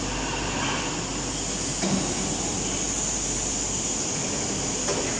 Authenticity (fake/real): real